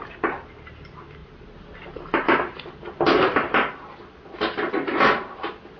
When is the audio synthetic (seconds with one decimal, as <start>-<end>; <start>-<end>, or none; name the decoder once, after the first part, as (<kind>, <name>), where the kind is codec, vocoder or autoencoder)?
none

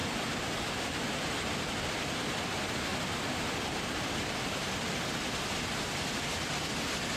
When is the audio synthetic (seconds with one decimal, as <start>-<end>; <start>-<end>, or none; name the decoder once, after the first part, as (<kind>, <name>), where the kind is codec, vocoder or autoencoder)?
0.0-0.6 (vocoder, BigVGAN v2); 2.9-6.3

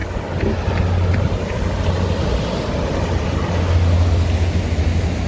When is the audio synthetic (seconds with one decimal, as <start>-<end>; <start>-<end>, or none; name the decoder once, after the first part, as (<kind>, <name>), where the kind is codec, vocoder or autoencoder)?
none

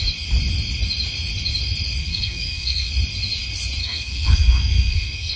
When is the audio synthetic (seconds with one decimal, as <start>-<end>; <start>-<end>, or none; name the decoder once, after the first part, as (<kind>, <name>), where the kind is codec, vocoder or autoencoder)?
2.0-2.9 (codec, SNAC); 3.8-5.4

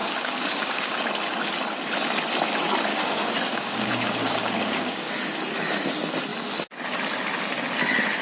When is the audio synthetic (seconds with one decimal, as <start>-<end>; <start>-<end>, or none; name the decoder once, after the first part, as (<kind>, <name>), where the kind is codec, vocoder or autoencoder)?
0.0-1.0 (codec, DAC); 2.9-5.1

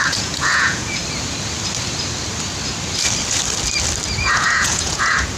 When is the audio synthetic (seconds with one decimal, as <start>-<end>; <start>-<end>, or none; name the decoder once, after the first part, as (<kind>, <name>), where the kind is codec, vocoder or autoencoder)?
0.0-1.0 (vocoder, Vocos); 4.2-5.4

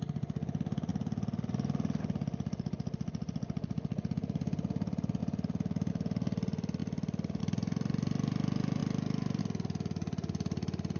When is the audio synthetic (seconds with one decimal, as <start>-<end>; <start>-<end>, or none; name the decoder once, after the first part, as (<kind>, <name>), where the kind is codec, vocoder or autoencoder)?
6.8-7.4 (vocoder, BigVGAN v2)